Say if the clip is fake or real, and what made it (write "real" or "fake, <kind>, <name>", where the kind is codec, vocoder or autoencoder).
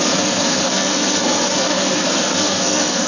fake, codec, SNAC